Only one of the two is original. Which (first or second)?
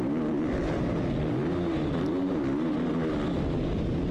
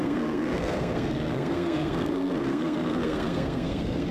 first